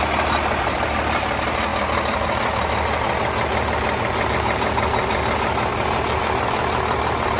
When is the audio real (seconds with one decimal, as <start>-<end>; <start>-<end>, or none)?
0.0-5.7; 6.2-7.4